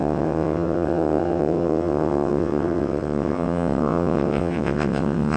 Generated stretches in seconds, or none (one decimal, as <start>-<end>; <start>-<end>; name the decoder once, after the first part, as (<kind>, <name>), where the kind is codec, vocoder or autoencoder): 0.0-5.4 (vocoder, WaveNeXt)